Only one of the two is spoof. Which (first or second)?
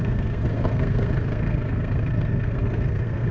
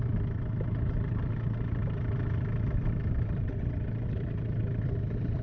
first